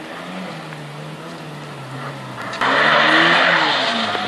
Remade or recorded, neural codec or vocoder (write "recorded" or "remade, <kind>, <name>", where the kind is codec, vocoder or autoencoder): recorded